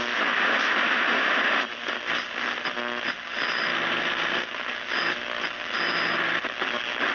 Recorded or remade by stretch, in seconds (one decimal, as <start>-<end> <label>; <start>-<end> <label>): 0.0-7.1 recorded